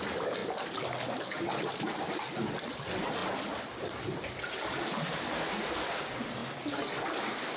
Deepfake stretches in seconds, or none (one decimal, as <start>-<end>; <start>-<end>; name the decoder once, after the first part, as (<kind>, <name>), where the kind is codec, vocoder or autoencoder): none